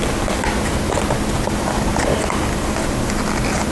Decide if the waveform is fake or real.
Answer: real